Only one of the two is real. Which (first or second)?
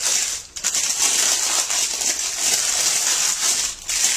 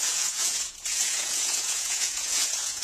first